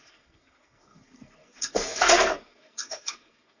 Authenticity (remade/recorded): remade